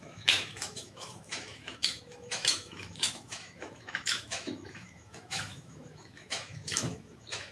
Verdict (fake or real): fake